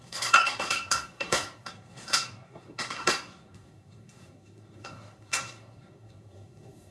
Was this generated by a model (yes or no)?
yes